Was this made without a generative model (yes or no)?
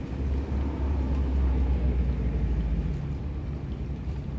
yes